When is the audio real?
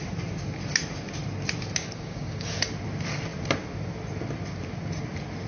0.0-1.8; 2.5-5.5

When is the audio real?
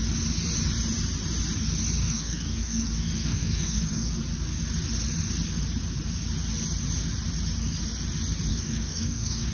0.0-2.0; 4.1-8.5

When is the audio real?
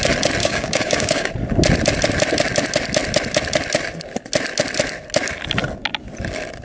0.0-0.4; 1.3-6.6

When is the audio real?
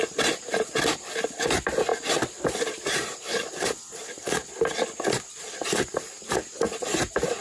0.0-7.4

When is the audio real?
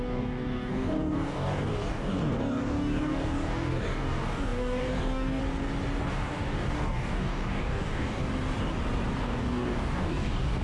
5.4-6.1; 8.3-9.2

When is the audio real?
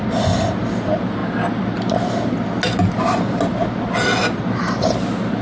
0.0-5.4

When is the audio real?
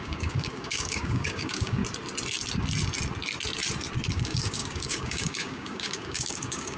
1.8-4.1